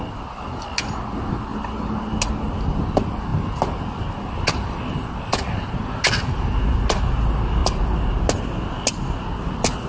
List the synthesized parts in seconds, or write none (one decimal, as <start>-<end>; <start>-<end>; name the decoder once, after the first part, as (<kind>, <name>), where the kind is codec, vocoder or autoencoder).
none